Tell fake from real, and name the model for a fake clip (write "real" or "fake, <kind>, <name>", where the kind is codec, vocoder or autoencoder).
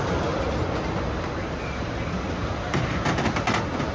real